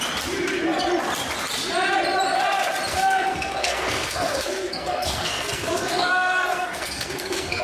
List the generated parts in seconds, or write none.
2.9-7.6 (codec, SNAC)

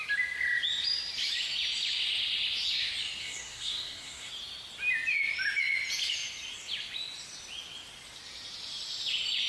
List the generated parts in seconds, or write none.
3.2-4.3 (codec, SNAC)

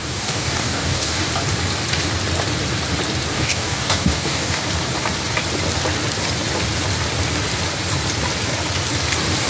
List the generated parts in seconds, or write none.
0.0-1.3 (codec, DAC); 3.3-4.6